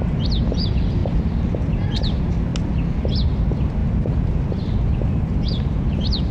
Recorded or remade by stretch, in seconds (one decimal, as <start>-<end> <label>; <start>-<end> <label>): 0.0-6.3 recorded

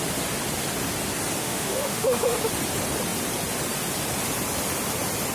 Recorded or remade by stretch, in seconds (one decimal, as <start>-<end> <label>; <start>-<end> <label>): 0.0-1.4 recorded; 1.4-2.3 remade; 2.3-5.3 recorded

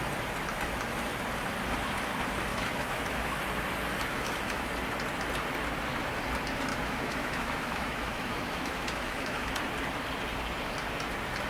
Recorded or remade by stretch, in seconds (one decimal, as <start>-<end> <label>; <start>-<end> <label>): 0.0-2.5 recorded; 2.5-3.4 remade; 3.4-4.1 recorded; 4.1-4.7 remade; 4.7-6.7 recorded; 6.7-9.5 remade; 9.5-11.5 recorded

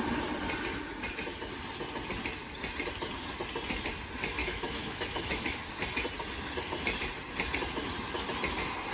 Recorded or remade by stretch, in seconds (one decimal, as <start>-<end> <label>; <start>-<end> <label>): 0.0-4.4 recorded; 4.4-5.6 remade; 5.6-8.9 recorded